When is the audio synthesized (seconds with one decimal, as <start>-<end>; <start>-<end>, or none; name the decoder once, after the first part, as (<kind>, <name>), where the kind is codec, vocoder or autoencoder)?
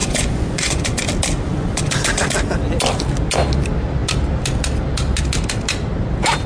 0.0-1.0 (vocoder, Vocos)